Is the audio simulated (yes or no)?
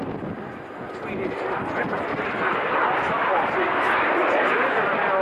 no